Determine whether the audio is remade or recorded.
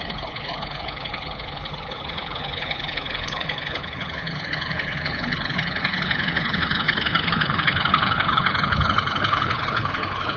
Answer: remade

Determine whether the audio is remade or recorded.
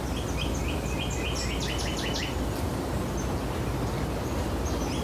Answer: recorded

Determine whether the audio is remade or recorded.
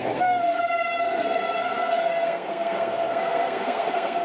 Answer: remade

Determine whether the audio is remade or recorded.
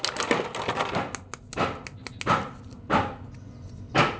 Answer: recorded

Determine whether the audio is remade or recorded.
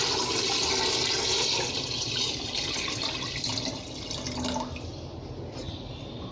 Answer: recorded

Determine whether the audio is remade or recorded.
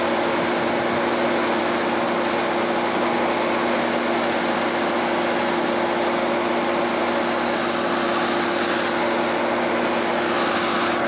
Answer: recorded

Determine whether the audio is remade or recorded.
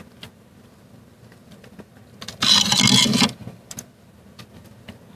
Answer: recorded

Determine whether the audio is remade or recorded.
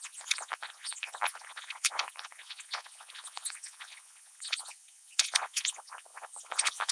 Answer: remade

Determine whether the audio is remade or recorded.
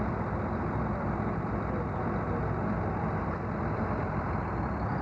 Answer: recorded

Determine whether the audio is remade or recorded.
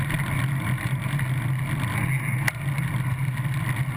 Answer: recorded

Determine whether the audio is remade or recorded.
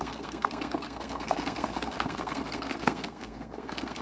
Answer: remade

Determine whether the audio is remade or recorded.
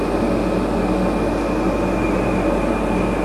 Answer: recorded